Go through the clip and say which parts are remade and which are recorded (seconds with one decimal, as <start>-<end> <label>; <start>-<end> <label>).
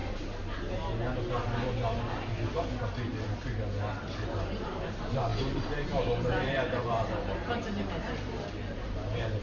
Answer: 0.0-4.2 recorded; 4.2-9.4 remade